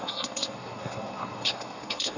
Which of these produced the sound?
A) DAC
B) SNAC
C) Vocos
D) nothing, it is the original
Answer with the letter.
B